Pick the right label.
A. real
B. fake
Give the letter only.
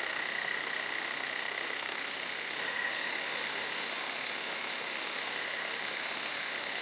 B